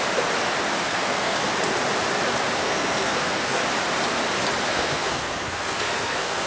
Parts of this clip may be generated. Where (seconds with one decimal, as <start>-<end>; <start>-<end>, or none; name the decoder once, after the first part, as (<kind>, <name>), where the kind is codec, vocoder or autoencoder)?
0.8-1.5 (codec, SNAC); 2.6-3.6; 4.7-6.5